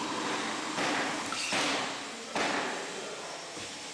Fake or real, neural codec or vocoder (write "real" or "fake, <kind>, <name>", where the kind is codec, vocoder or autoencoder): real